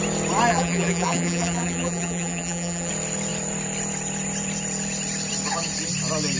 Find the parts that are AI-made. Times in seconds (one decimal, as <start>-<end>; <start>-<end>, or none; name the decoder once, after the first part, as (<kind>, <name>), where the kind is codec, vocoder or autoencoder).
0.5-2.9 (vocoder, BigVGAN v2)